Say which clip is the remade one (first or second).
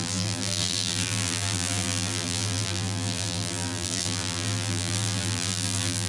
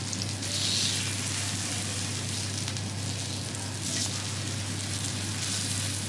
first